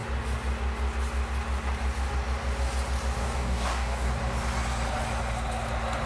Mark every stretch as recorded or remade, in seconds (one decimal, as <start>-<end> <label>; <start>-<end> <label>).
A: 0.0-3.2 recorded; 3.2-4.1 remade; 4.1-6.1 recorded